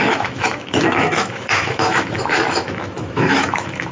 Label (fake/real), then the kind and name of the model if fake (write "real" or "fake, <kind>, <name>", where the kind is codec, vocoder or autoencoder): fake, autoencoder, DAC-VAE